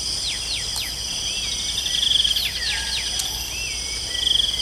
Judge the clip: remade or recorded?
recorded